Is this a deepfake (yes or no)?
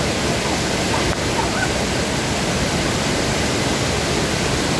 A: no